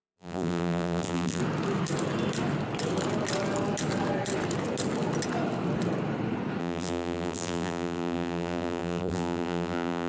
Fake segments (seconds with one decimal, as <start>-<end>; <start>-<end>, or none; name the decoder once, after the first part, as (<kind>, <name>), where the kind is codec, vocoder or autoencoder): 0.0-1.4 (vocoder, BigVGAN v2); 6.6-10.1